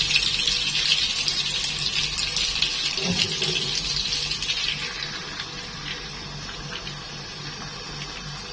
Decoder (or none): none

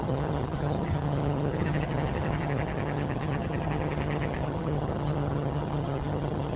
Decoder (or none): vocoder, HiFi-GAN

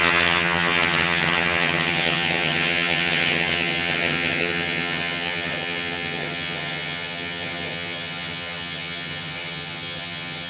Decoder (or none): vocoder, HiFi-GAN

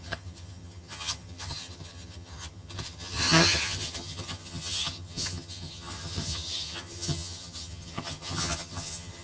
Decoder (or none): vocoder, HiFi-GAN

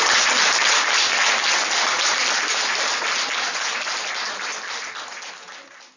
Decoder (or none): none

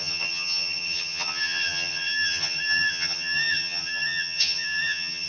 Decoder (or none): vocoder, HiFi-GAN